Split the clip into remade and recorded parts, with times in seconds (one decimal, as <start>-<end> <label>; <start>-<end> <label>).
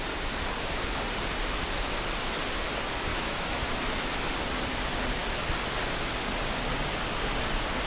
0.0-3.1 recorded; 3.1-4.3 remade; 4.3-7.9 recorded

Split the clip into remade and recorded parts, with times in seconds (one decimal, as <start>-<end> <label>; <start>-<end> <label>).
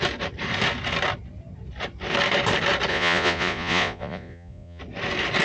0.0-2.9 recorded; 2.9-4.8 remade; 4.8-5.4 recorded